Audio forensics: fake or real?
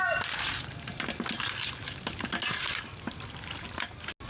real